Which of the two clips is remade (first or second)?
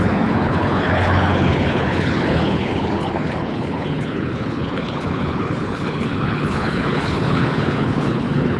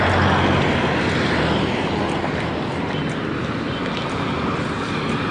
first